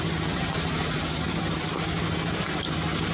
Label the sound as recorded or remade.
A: remade